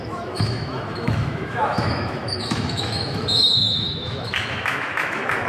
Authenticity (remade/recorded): remade